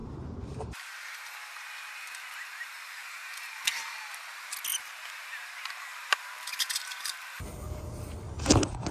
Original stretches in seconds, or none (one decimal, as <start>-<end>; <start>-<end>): 3.6-4.7; 8.1-8.9